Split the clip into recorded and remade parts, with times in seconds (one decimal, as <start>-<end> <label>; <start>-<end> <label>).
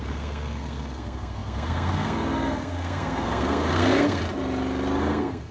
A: 0.0-4.2 remade; 4.2-5.0 recorded; 5.0-5.5 remade